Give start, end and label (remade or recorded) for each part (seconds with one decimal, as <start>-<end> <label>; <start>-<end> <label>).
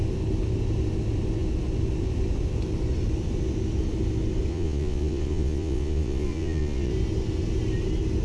0.0-4.5 recorded; 4.5-6.9 remade; 6.9-8.2 recorded